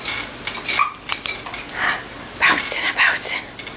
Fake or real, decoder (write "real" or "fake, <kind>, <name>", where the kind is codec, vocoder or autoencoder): real